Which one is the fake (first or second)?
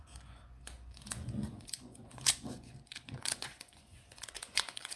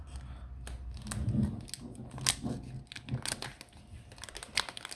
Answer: first